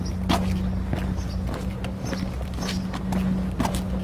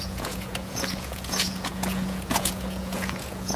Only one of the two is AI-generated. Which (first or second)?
second